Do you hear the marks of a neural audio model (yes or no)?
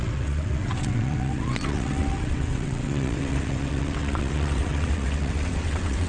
yes